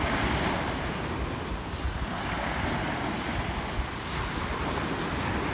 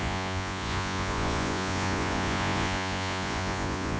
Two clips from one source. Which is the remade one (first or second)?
second